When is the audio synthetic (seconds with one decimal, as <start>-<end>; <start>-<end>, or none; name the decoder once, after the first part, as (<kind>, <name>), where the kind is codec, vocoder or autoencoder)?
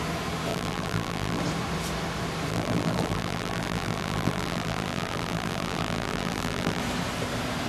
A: 0.5-1.4 (vocoder, BigVGAN v2); 2.5-6.8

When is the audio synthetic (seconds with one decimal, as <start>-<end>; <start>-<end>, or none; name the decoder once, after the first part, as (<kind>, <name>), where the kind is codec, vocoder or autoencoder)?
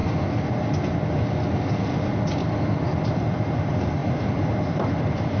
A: 3.2-5.4 (vocoder, BigVGAN v2)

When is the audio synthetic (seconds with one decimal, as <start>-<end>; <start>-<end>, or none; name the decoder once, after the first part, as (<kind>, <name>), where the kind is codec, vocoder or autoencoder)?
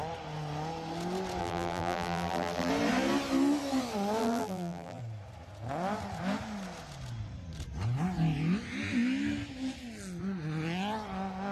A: 1.4-2.7 (vocoder, BigVGAN v2); 4.2-5.0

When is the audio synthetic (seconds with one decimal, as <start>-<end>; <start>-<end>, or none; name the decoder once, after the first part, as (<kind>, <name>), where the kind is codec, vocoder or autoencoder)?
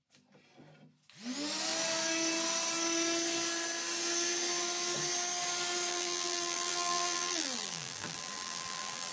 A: 5.9-9.1 (vocoder, BigVGAN v2)